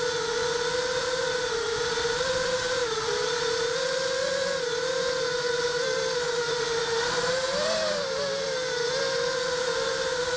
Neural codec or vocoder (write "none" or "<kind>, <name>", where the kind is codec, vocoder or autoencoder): vocoder, BigVGAN v2